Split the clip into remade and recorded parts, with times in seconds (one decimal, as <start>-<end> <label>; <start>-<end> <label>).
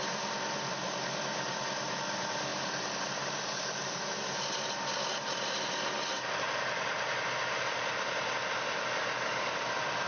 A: 0.0-10.1 recorded